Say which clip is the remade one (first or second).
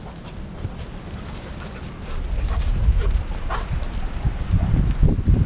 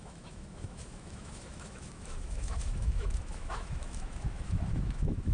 second